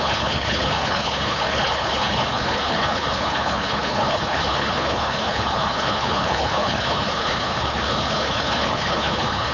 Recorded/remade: remade